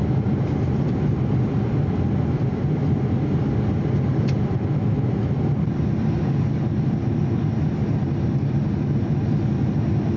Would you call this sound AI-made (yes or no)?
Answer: no